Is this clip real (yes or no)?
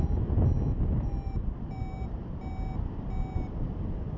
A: yes